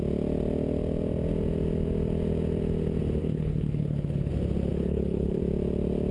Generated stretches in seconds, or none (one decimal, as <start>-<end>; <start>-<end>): 3.2-4.3; 4.7-5.4